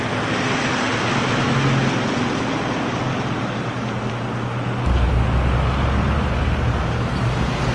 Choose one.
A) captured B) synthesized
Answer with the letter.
A